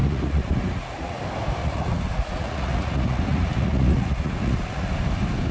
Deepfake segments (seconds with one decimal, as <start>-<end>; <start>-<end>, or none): 0.0-1.2; 1.6-4.9